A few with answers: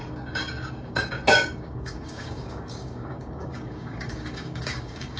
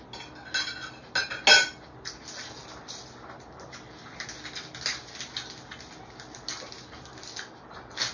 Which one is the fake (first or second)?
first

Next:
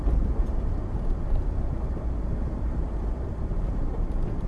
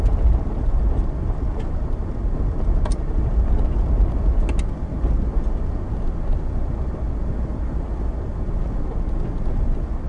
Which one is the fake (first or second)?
first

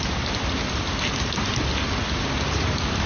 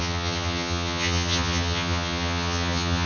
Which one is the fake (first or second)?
second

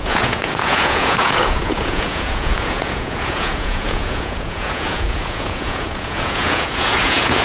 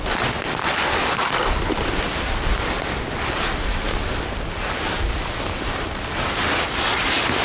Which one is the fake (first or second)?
first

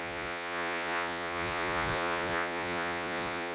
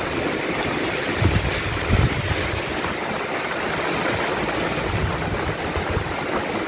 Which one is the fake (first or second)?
first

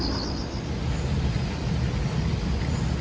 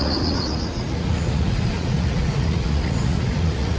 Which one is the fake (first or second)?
second